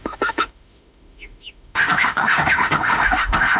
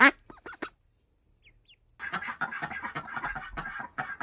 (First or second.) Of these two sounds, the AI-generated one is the first